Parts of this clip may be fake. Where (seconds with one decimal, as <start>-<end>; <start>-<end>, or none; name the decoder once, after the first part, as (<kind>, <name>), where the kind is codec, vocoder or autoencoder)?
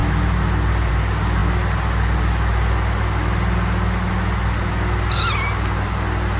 none